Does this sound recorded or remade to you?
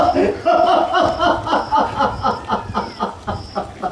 recorded